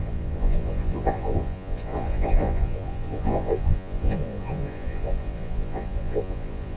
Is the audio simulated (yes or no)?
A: yes